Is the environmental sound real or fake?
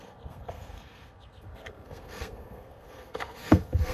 fake